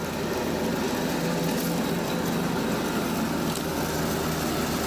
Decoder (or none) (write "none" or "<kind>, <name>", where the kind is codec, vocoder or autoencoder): none